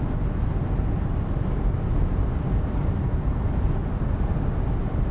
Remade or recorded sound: recorded